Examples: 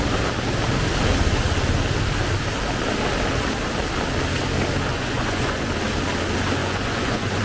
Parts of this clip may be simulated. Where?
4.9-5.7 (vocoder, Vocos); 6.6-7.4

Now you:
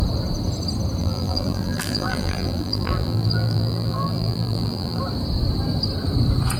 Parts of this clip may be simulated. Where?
1.0-5.0 (vocoder, BigVGAN v2)